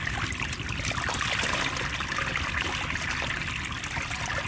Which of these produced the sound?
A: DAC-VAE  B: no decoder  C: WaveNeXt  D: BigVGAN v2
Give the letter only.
B